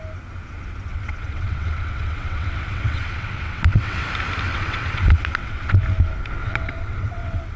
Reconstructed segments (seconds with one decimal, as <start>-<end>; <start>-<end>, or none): 0.9-4.1; 4.5-5.8; 6.4-7.6